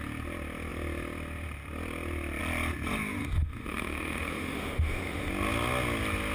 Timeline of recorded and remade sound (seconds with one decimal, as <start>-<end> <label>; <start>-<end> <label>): 0.0-3.2 recorded; 3.2-5.3 remade; 5.3-6.3 recorded

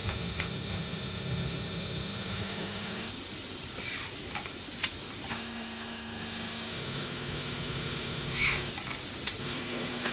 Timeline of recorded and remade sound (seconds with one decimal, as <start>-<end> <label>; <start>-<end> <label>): 0.0-3.1 remade; 3.1-5.3 recorded; 5.3-8.7 remade; 8.7-9.4 recorded; 9.4-10.1 remade

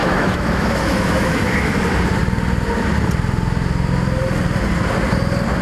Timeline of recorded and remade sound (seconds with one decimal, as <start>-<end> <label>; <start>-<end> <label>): 0.0-1.8 remade; 1.8-5.6 recorded